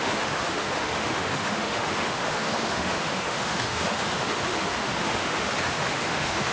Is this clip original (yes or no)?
no